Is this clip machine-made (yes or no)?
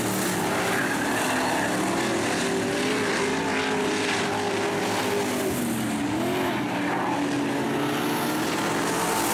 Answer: no